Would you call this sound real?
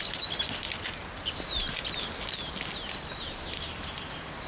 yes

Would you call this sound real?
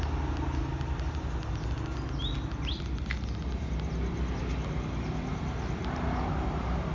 yes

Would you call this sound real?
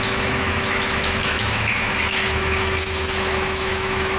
no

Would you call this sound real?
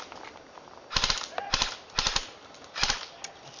yes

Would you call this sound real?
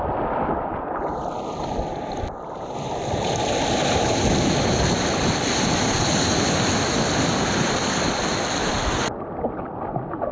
yes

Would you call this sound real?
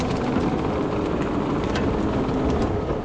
yes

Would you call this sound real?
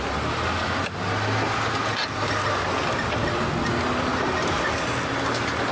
yes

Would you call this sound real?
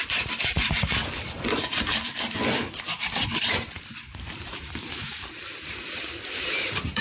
no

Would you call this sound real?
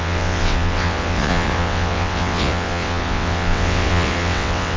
no